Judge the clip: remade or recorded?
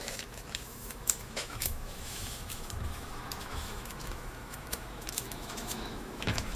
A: remade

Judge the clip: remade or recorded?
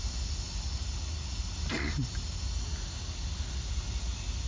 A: recorded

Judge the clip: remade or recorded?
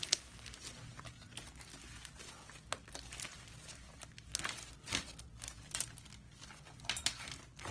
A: recorded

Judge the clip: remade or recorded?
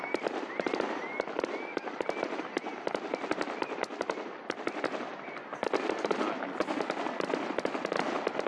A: recorded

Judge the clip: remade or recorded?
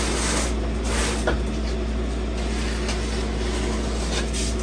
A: recorded